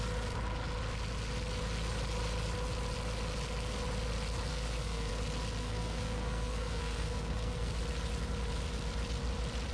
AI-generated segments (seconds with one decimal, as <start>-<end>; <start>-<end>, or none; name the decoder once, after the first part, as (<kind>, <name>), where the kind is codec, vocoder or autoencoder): 4.5-5.1 (codec, SNAC); 5.6-7.8